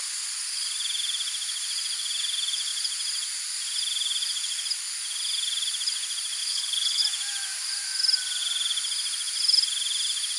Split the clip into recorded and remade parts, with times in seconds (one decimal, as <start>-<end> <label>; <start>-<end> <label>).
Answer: 0.0-6.4 recorded; 6.4-7.0 remade; 7.0-10.4 recorded